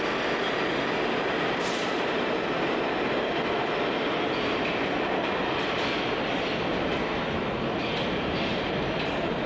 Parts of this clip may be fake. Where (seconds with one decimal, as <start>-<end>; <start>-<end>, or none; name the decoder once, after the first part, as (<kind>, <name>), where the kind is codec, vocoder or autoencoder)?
none

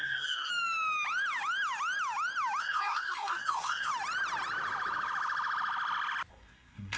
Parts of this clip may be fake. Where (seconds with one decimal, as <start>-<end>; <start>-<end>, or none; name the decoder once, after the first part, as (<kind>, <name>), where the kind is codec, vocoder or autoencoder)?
0.0-0.5 (codec, SNAC); 2.6-3.9; 6.3-7.0

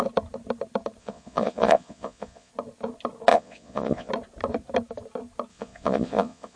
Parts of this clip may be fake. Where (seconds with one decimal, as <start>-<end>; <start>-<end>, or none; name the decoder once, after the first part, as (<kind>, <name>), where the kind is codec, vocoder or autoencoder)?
1.0-2.5 (vocoder, Vocos); 3.3-4.1; 5.5-6.6

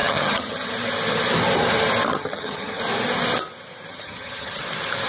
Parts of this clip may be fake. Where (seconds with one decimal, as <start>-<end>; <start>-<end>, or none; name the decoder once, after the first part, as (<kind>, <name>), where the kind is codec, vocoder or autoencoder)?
0.0-0.7 (vocoder, HiFi-GAN); 2.1-2.8; 3.9-4.6

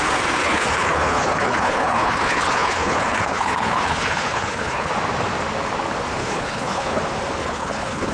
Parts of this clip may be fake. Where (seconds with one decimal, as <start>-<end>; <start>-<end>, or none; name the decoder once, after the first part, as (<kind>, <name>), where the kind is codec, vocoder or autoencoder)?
0.4-4.9 (codec, HILCodec); 6.2-7.0; 7.4-8.1